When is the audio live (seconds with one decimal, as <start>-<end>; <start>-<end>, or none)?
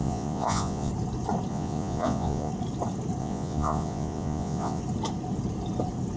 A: 0.9-1.5; 2.5-3.2; 4.8-6.2